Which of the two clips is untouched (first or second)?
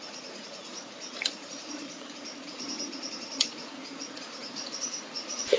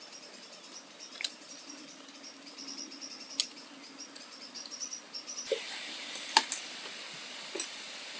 second